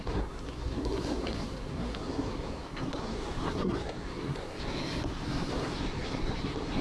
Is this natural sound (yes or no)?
no